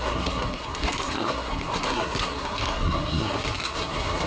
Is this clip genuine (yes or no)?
no